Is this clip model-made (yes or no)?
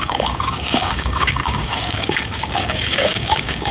yes